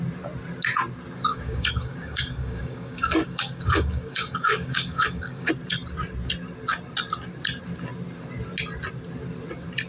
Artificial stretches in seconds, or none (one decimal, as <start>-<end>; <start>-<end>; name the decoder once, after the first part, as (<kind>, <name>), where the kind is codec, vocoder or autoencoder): 1.3-5.5 (codec, DAC)

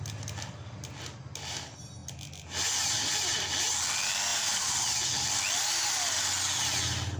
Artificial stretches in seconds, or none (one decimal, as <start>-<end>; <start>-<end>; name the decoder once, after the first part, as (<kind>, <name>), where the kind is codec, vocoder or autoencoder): none

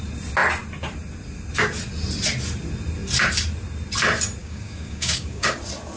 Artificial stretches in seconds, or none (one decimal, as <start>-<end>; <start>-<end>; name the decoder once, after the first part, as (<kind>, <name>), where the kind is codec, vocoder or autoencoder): 4.4-5.6 (codec, DAC)

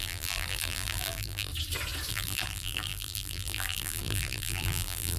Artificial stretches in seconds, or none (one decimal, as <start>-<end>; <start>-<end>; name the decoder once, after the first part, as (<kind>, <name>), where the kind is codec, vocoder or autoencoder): 0.0-1.5 (vocoder, BigVGAN v2); 2.1-5.2

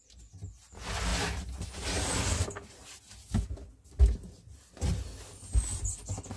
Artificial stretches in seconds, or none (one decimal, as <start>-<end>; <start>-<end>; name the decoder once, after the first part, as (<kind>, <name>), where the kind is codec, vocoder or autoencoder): none

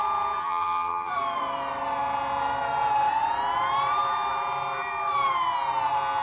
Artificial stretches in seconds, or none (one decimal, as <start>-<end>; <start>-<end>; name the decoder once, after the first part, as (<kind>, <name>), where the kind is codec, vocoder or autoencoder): 0.4-1.1 (vocoder, HiFi-GAN)

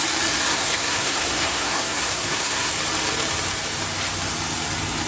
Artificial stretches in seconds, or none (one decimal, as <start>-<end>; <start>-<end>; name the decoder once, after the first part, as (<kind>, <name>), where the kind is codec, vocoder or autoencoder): 0.5-2.7 (codec, SNAC)